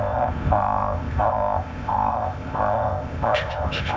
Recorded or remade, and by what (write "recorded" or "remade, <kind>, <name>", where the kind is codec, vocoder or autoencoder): remade, codec, ZipCodec